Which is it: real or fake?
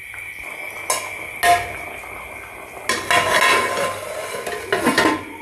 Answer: real